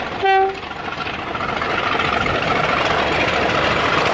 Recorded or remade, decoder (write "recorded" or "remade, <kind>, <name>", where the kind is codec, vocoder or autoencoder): recorded